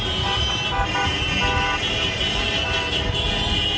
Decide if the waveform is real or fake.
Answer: fake